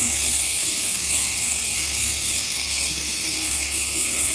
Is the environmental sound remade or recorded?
remade